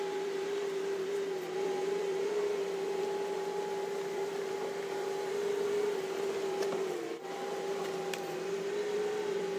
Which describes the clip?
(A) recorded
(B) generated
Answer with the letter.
B